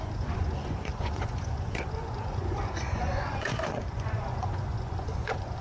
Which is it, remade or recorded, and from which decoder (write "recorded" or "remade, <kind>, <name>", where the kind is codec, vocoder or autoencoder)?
remade, vocoder, Vocos